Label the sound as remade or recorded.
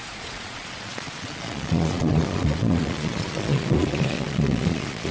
remade